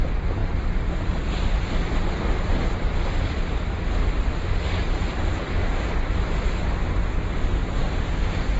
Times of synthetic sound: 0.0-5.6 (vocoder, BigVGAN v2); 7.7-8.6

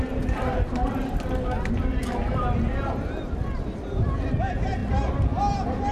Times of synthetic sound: none

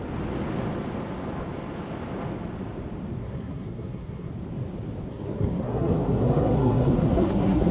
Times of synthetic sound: 3.2-4.3 (codec, SNAC); 5.1-7.7